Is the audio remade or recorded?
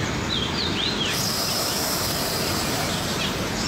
recorded